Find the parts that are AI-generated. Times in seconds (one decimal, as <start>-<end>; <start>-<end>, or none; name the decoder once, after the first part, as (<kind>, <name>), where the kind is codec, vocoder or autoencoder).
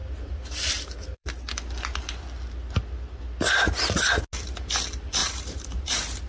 0.0-1.4 (vocoder, BigVGAN v2); 5.2-6.3